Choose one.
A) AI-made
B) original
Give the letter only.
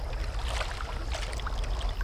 B